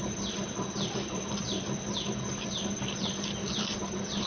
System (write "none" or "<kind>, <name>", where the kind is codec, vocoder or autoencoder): none